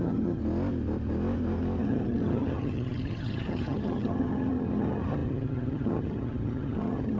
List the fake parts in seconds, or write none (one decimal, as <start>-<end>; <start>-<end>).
0.0-0.4; 1.8-7.2